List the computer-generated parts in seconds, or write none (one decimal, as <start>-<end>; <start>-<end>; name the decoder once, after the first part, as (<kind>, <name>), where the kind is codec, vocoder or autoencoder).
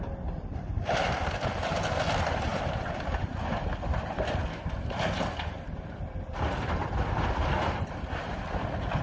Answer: 2.5-4.2 (vocoder, BigVGAN v2)